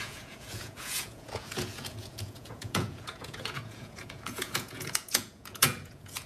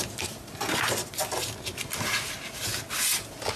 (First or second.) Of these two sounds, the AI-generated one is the first